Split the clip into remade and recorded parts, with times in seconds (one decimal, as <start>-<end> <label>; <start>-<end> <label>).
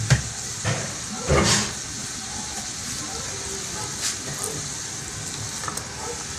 0.0-6.4 recorded